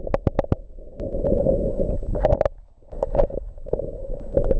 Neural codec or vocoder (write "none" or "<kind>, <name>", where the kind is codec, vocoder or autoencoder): none